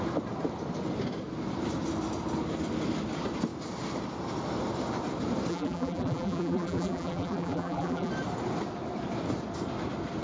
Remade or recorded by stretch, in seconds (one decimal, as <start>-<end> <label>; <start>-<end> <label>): 0.0-5.5 recorded; 5.5-8.1 remade; 8.1-10.2 recorded